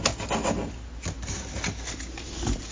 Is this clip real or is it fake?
real